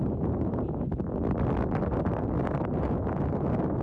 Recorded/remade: recorded